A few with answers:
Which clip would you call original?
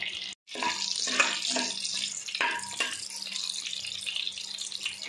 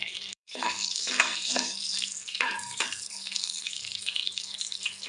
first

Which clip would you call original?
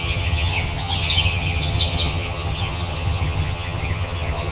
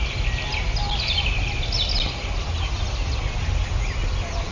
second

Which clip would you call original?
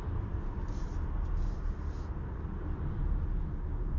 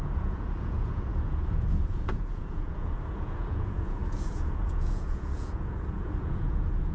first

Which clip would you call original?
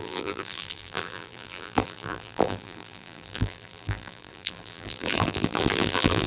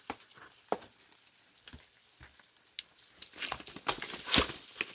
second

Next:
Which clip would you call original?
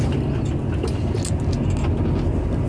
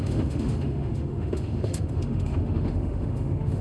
first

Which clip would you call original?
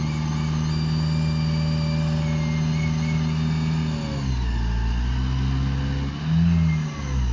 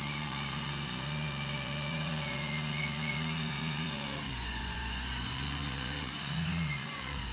first